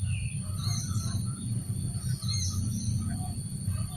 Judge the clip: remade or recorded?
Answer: recorded